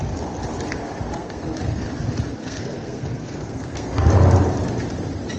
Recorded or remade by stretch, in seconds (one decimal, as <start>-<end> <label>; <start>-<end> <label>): 0.0-1.2 recorded; 1.2-1.8 remade; 1.8-2.4 recorded; 2.4-4.1 remade; 4.1-5.4 recorded